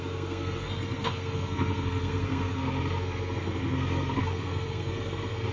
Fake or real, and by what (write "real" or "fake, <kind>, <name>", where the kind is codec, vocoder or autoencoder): fake, codec, SNAC